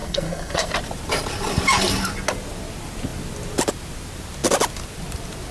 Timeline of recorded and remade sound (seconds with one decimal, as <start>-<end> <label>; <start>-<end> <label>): 0.0-0.7 remade; 0.7-5.5 recorded